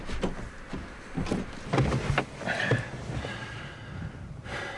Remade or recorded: recorded